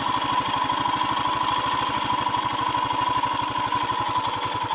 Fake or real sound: real